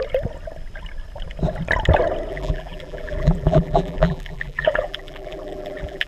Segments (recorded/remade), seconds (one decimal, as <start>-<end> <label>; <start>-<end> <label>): 0.0-2.3 recorded; 2.3-6.1 remade